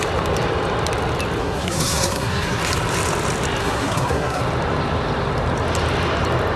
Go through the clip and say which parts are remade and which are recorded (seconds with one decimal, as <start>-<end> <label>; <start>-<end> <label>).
0.0-1.4 recorded; 1.4-2.6 remade; 2.6-3.6 recorded; 3.6-4.4 remade; 4.4-6.6 recorded